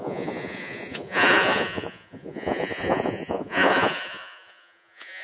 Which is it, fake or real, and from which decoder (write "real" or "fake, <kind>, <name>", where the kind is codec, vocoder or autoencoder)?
fake, vocoder, Vocos